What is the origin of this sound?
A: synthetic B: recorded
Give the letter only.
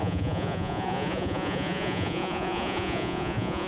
A